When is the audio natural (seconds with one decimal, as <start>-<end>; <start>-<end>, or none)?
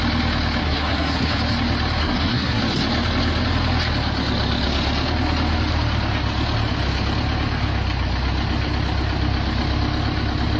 0.0-0.6; 1.3-2.0; 2.6-10.6